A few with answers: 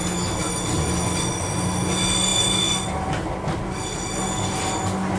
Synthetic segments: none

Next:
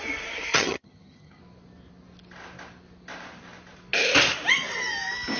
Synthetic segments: 0.5-1.4 (vocoder, HiFi-GAN)

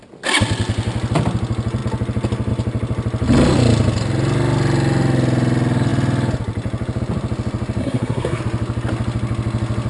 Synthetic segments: 7.8-8.4 (codec, SNAC)

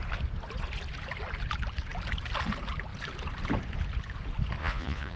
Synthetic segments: 4.6-5.2 (vocoder, Vocos)